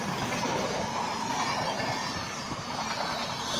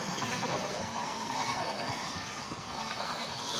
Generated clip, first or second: second